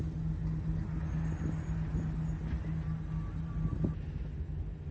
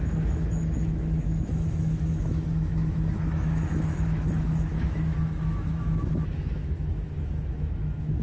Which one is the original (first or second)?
first